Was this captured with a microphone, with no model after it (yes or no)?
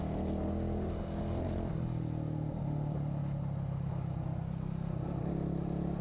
yes